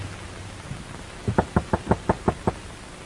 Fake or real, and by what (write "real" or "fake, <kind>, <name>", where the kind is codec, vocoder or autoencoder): real